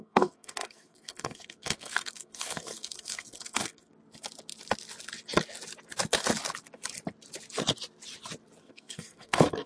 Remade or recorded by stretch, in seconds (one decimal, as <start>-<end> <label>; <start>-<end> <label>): 0.0-3.9 remade; 3.9-8.6 recorded; 8.6-9.7 remade